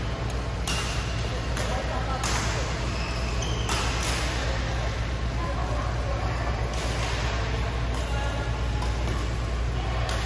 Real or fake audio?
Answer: real